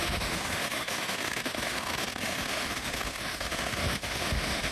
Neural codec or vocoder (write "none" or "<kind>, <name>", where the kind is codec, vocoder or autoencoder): autoencoder, DAC-VAE